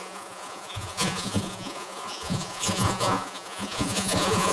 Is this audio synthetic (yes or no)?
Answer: yes